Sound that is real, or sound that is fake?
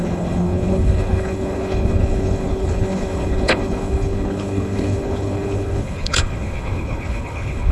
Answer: fake